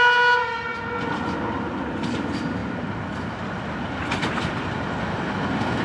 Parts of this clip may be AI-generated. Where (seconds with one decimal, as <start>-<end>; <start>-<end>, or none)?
none

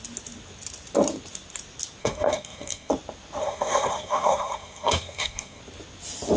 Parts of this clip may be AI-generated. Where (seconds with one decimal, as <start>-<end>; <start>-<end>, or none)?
2.0-2.9; 3.4-5.6